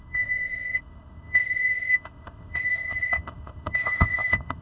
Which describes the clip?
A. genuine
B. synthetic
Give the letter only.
B